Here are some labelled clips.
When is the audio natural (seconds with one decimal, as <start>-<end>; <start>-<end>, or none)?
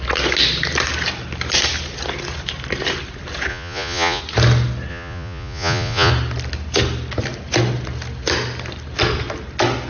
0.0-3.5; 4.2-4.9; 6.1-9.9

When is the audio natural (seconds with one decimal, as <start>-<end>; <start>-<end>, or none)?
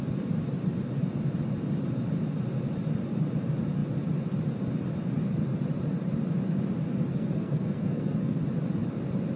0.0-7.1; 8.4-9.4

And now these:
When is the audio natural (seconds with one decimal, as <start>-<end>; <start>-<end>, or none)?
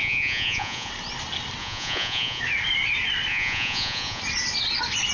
0.9-1.6; 2.4-3.3; 4.2-5.1